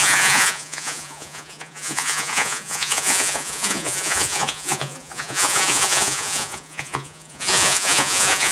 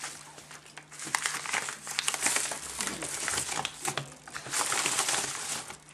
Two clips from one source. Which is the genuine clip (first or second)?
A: second